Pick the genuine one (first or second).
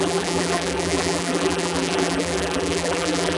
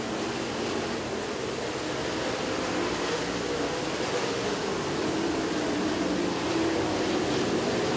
second